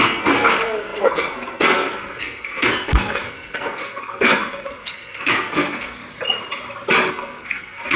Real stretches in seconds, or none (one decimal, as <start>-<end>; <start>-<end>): 6.0-7.1